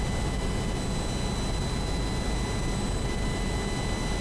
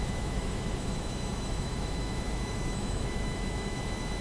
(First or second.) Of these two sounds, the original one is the first